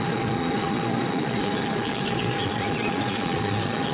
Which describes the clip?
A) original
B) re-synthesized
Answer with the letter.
B